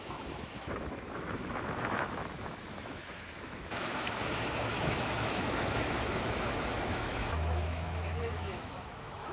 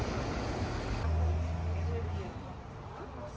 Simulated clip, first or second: first